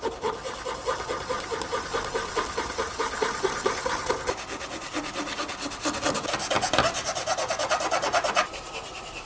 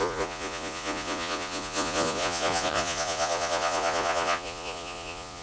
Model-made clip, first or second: second